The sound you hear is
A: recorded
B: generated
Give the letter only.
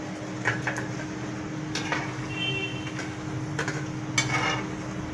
A